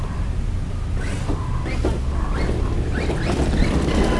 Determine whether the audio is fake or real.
real